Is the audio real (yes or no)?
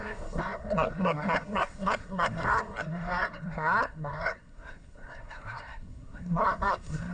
no